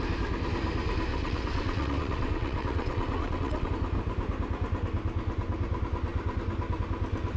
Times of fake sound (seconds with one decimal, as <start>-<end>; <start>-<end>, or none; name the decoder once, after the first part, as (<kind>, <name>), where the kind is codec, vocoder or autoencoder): 1.1-3.7 (vocoder, WaveNeXt)